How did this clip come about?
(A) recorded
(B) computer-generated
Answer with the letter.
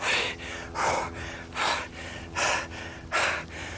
A